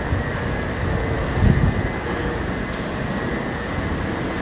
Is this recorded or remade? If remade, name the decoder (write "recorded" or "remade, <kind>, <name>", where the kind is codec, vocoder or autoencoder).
recorded